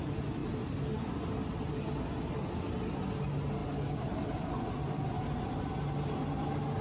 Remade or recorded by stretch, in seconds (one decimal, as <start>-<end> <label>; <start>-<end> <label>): 0.0-3.6 recorded; 3.6-5.1 remade; 5.1-6.8 recorded